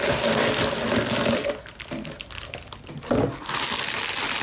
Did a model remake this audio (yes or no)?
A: no